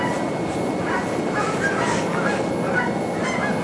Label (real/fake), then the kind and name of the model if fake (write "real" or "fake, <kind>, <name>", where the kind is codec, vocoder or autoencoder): real